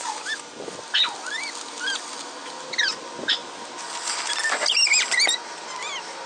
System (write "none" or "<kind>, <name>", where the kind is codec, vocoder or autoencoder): none